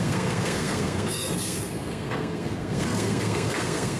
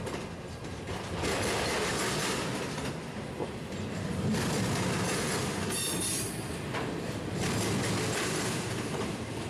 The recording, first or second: second